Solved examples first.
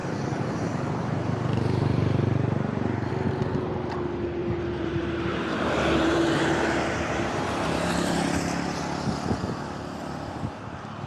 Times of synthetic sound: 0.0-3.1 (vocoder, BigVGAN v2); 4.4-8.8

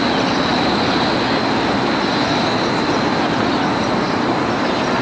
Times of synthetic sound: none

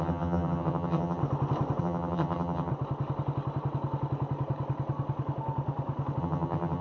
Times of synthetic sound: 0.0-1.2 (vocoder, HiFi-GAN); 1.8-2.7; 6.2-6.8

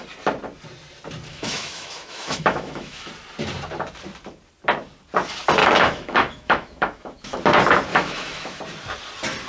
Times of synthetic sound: 1.3-3.1 (autoencoder, DAC-VAE); 5.6-7.4; 7.9-8.6

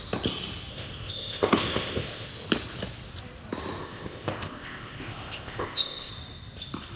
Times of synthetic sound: 0.7-2.3 (codec, ZipCodec); 3.8-6.1

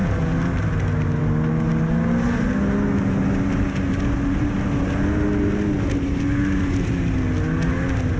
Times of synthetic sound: none

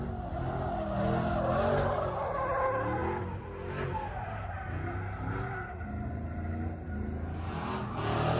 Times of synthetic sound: none

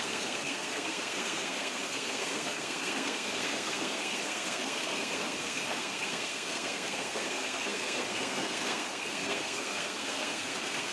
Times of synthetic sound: 0.0-10.9 (codec, SNAC)